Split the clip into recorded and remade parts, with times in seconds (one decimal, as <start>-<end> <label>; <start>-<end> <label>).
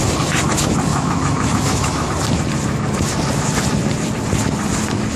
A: 0.0-0.9 recorded; 0.9-2.1 remade; 2.1-5.2 recorded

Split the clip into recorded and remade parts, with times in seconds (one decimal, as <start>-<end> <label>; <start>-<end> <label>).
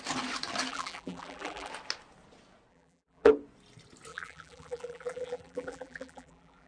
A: 0.0-0.7 recorded; 0.7-1.7 remade; 1.7-2.7 recorded; 2.7-3.3 remade; 3.3-4.1 recorded; 4.1-6.7 remade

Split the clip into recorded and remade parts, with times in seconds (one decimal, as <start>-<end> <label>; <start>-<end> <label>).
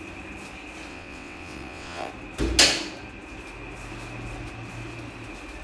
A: 0.0-0.9 recorded; 0.9-2.1 remade; 2.1-5.6 recorded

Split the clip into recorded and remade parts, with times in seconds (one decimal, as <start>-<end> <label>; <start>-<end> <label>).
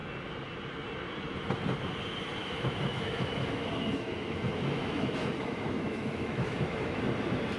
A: 0.0-2.4 recorded; 2.4-7.0 remade; 7.0-7.6 recorded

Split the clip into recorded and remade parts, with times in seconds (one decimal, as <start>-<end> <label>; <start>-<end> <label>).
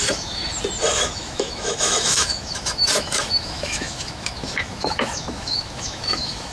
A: 0.0-0.4 remade; 0.4-1.0 recorded; 1.0-6.5 remade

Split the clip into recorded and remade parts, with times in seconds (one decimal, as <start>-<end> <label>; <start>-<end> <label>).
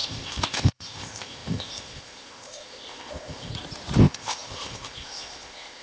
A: 0.0-3.5 remade; 3.5-4.0 recorded; 4.0-5.8 remade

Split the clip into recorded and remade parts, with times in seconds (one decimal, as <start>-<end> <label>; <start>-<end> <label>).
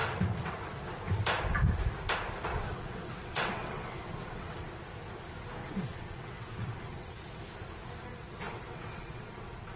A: 0.0-0.5 remade; 0.5-2.5 recorded; 2.5-4.7 remade; 4.7-5.6 recorded; 5.6-7.4 remade; 7.4-8.1 recorded; 8.1-9.8 remade